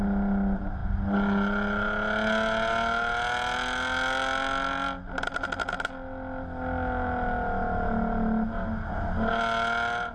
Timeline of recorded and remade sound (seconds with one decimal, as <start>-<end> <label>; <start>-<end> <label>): 0.0-10.1 recorded